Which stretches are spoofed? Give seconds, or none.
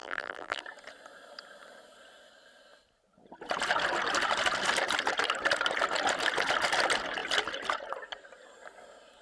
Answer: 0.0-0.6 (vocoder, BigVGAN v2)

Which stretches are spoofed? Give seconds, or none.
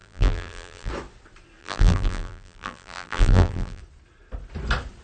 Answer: 0.0-0.9 (vocoder, BigVGAN v2); 1.6-3.8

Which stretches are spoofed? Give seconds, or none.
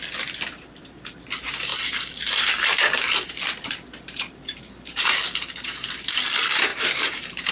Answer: 1.7-5.9 (vocoder, BigVGAN v2); 6.7-7.5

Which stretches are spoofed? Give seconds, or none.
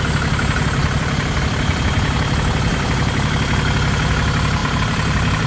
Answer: 0.8-1.4 (vocoder, BigVGAN v2); 2.7-3.3; 4.6-5.5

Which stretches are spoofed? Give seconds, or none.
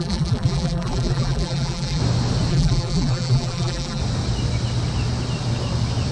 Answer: 0.0-2.0 (vocoder, BigVGAN v2); 2.5-4.0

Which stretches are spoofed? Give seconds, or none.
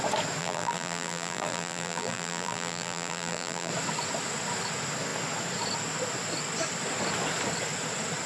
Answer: 0.4-3.7 (vocoder, BigVGAN v2)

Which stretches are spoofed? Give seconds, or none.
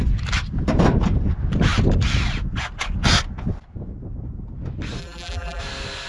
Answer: 5.0-5.6 (vocoder, BigVGAN v2)